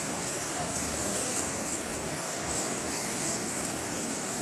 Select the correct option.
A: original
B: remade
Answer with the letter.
B